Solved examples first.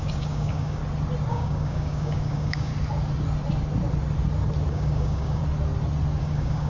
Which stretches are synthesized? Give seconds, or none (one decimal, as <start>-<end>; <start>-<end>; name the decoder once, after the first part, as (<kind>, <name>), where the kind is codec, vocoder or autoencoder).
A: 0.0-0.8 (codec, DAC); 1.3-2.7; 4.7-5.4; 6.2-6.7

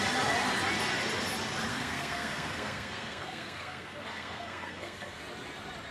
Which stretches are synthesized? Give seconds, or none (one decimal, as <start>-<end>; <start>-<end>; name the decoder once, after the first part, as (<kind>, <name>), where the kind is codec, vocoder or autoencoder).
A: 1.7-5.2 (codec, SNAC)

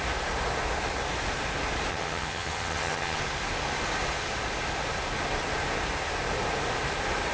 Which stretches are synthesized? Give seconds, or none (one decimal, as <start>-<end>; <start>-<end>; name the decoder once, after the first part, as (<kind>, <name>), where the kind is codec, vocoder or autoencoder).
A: 1.9-3.2 (vocoder, HiFi-GAN)

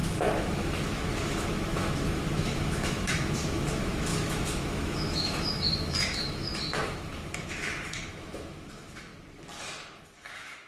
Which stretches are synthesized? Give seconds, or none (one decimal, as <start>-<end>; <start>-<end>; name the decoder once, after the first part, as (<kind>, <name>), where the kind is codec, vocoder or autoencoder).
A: 0.0-9.1 (autoencoder, DAC-VAE); 10.0-10.7

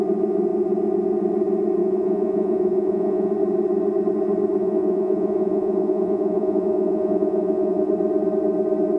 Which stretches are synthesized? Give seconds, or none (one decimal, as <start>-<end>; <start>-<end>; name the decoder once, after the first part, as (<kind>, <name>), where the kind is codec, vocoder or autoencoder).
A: 1.8-3.3 (vocoder, Vocos); 4.6-7.9